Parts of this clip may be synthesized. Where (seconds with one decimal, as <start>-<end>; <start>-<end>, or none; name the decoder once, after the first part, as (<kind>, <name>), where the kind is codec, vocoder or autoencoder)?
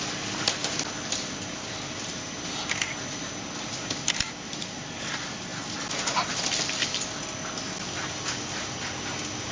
none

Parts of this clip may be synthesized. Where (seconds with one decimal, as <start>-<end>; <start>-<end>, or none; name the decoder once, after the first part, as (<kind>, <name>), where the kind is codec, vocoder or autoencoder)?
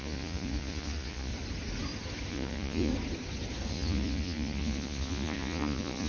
0.0-1.3 (vocoder, Vocos); 2.3-2.9; 3.7-6.1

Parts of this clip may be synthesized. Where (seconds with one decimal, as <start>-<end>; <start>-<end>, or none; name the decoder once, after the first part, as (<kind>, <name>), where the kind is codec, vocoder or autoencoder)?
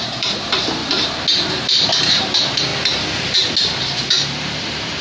0.0-0.8 (vocoder, BigVGAN v2); 1.5-2.7; 3.8-5.0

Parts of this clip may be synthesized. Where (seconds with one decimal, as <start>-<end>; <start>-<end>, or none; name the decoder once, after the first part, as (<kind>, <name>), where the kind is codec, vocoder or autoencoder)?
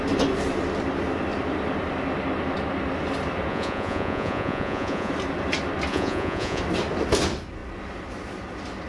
3.5-5.1 (vocoder, Vocos); 5.9-6.6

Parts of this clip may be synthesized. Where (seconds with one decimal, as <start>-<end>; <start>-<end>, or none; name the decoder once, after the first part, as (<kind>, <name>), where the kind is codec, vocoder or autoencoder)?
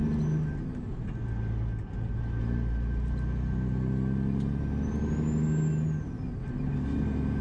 none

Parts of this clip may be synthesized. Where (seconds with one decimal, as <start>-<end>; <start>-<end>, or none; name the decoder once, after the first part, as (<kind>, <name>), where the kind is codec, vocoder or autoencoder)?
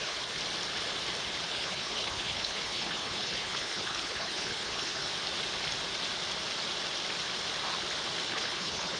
0.0-0.4 (codec, HILCodec); 1.5-5.1; 8.3-9.0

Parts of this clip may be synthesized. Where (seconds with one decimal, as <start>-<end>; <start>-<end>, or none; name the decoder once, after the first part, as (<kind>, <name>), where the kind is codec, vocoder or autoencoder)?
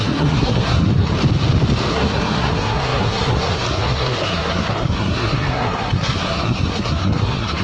0.0-1.1 (codec, SNAC); 1.9-7.6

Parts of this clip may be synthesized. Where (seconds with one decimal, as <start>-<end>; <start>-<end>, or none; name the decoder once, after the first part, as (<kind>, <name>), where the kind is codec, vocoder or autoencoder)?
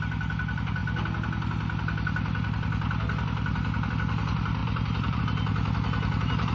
4.6-5.2 (vocoder, BigVGAN v2)